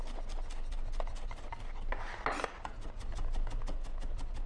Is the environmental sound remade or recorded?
recorded